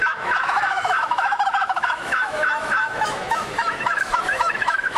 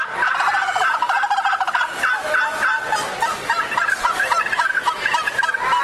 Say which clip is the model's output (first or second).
first